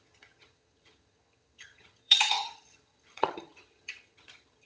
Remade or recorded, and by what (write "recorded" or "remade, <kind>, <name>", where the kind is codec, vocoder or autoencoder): remade, vocoder, HiFi-GAN